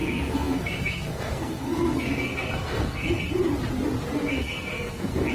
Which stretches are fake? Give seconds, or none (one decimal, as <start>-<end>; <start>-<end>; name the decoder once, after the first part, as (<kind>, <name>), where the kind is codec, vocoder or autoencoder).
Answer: 0.0-3.2 (codec, SNAC); 4.3-5.3